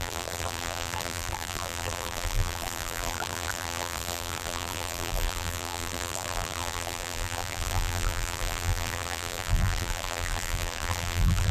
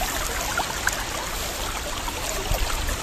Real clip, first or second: second